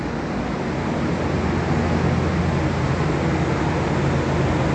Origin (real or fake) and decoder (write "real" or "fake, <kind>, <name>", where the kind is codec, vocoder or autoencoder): real